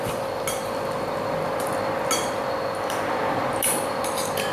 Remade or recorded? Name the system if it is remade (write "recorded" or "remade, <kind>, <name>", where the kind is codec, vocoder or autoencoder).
recorded